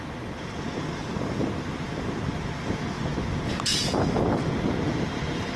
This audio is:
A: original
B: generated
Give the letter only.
A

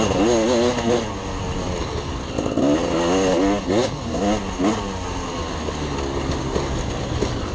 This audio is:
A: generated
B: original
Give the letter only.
B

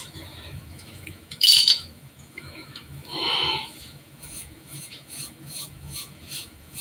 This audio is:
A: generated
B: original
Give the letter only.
A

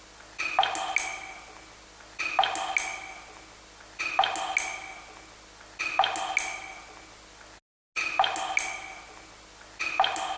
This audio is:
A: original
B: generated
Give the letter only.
A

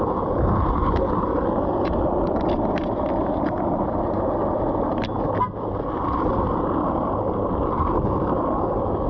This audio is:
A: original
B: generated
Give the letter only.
A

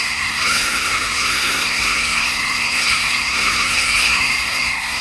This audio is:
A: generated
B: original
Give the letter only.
A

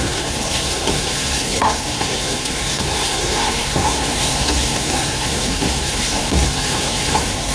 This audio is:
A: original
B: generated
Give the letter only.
B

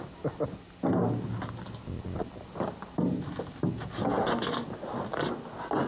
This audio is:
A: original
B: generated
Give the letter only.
A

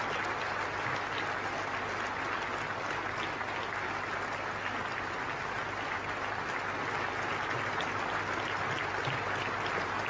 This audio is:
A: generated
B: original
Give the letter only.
B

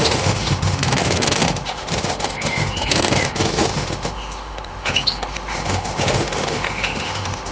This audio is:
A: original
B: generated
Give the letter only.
B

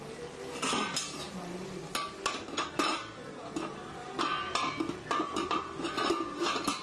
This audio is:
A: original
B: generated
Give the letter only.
A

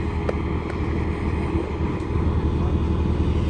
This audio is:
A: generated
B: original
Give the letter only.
B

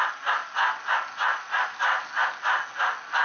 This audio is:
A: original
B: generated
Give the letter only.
A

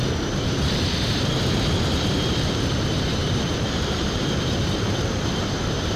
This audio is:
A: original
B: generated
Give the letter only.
B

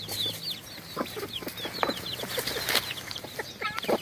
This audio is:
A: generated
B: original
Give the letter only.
B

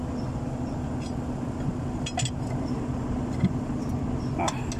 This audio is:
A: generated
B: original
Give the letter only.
B